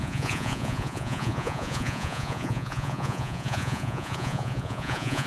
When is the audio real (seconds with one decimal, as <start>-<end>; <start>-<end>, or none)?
none